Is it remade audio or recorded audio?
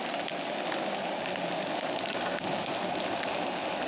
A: recorded